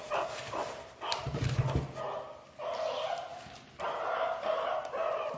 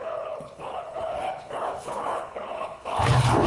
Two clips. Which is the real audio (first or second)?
first